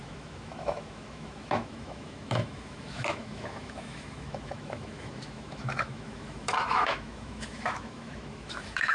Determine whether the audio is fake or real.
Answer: fake